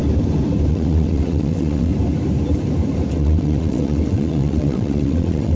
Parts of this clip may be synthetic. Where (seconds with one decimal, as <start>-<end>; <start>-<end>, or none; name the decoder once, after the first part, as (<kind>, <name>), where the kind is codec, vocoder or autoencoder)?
0.7-1.9 (vocoder, WaveNeXt); 3.1-5.6